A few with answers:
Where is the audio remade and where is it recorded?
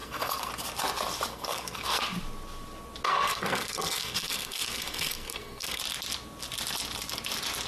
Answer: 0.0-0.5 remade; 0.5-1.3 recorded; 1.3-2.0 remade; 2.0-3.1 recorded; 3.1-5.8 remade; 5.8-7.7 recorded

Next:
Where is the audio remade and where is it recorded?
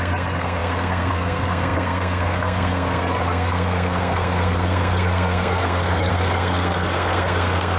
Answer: 0.0-7.8 remade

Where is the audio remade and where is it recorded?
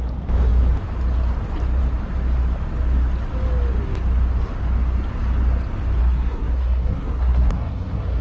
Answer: 0.0-6.0 recorded; 6.0-8.2 remade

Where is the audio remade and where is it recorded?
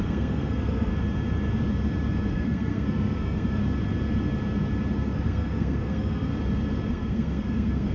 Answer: 0.0-0.9 remade; 0.9-2.3 recorded; 2.3-3.6 remade; 3.6-5.0 recorded; 5.0-6.3 remade; 6.3-6.9 recorded; 6.9-7.9 remade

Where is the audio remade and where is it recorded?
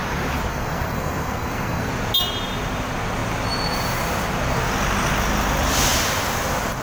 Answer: 0.0-0.5 recorded; 0.5-1.9 remade; 1.9-6.8 recorded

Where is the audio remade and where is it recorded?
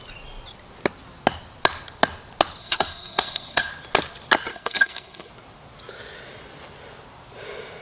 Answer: 0.0-2.6 recorded; 2.6-3.7 remade; 3.7-4.5 recorded; 4.5-5.3 remade; 5.3-7.8 recorded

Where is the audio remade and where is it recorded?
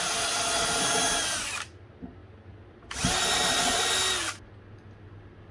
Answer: 0.0-5.5 recorded